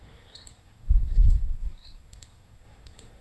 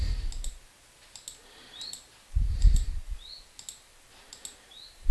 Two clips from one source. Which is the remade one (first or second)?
first